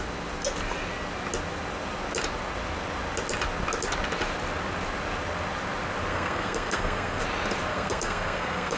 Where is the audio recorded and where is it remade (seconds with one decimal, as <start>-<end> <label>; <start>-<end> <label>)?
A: 0.0-6.1 recorded; 6.1-7.2 remade; 7.2-7.7 recorded; 7.7-8.8 remade